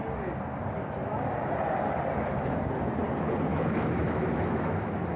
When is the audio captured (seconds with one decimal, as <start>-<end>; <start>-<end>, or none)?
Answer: 0.0-3.5